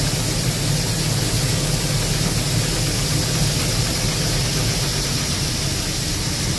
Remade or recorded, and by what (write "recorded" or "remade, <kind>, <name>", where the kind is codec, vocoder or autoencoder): recorded